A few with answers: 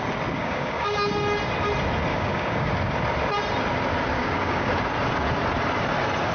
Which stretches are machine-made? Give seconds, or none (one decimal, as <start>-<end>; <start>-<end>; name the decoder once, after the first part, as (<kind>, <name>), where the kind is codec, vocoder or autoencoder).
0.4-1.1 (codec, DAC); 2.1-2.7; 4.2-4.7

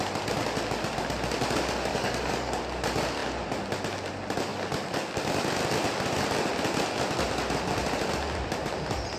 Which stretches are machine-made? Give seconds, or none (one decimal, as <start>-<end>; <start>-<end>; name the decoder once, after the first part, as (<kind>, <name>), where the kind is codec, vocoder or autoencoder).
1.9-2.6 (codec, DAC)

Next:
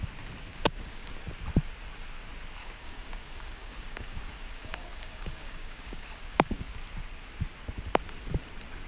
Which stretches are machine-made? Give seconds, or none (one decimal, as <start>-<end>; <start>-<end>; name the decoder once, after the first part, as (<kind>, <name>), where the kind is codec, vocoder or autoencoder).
0.5-1.1 (codec, DAC); 2.6-6.7

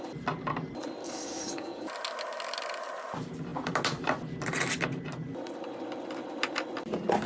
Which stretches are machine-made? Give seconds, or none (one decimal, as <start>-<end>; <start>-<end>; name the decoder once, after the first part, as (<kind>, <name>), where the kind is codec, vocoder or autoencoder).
1.0-1.9 (codec, DAC)

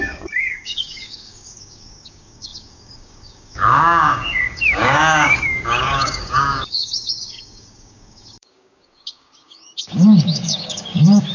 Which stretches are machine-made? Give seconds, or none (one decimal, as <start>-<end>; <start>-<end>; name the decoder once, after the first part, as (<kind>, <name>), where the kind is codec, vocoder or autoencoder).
0.0-11.3 (codec, DAC)

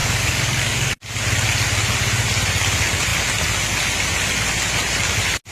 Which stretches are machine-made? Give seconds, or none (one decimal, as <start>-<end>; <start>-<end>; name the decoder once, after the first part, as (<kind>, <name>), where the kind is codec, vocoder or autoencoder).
0.0-0.9 (codec, DAC)